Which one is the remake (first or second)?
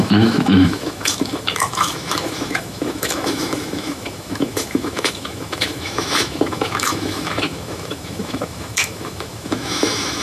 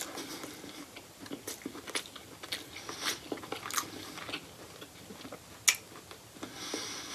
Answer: first